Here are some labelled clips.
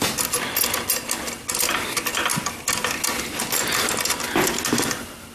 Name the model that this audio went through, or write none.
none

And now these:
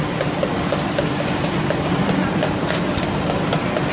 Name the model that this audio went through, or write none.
none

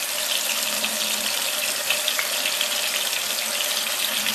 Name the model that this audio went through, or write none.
none